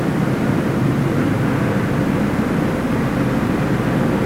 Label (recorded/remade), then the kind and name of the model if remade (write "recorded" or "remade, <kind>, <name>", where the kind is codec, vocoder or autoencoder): recorded